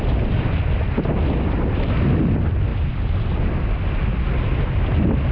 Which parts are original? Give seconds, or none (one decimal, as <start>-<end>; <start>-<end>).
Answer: 0.0-5.3